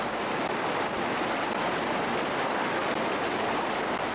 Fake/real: real